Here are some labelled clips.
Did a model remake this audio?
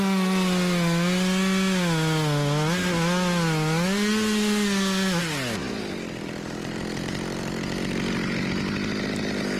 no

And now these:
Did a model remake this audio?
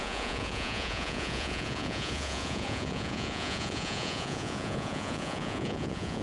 yes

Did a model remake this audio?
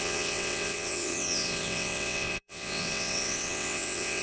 yes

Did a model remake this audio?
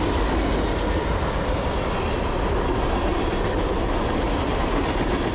no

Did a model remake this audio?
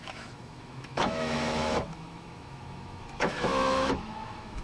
yes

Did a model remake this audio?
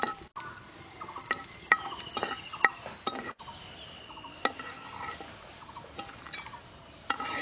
no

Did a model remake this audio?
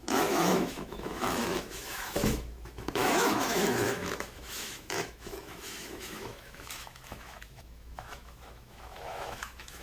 yes